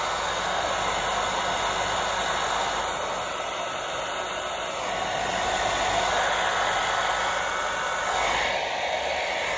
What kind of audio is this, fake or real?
real